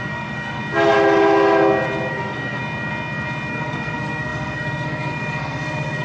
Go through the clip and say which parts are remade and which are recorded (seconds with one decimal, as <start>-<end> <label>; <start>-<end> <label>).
0.0-0.6 remade; 0.6-2.1 recorded; 2.1-2.6 remade; 2.6-3.5 recorded; 3.5-6.0 remade